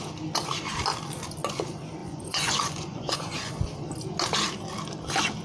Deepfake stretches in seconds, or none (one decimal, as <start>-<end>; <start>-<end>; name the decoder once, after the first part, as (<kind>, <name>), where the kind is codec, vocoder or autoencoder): 2.0-3.5 (vocoder, Vocos)